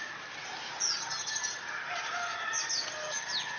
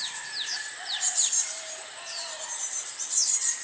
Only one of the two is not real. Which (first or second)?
second